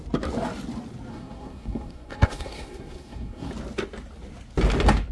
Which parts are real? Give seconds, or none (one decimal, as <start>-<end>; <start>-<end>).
0.0-1.1; 3.5-5.1